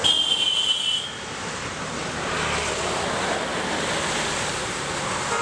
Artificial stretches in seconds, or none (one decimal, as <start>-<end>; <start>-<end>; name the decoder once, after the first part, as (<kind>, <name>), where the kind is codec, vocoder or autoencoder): none